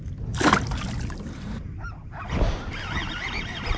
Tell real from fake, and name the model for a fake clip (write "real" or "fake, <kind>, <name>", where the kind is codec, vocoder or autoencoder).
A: real